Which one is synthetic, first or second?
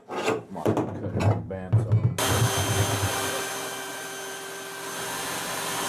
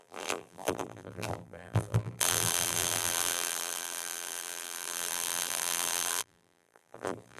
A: second